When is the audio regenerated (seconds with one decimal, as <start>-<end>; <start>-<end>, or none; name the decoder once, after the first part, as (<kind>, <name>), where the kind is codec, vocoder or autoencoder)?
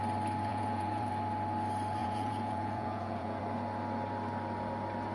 0.5-1.1 (vocoder, Vocos); 2.0-3.4